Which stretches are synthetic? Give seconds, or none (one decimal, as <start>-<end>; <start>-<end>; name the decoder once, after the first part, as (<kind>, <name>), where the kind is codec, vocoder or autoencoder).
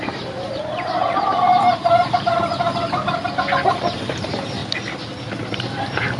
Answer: 0.0-1.3 (vocoder, BigVGAN v2); 3.7-4.6; 5.3-6.2